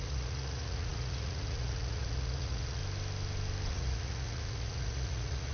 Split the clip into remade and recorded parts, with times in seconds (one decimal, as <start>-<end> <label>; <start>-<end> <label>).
0.0-2.8 remade; 2.8-3.7 recorded; 3.7-5.5 remade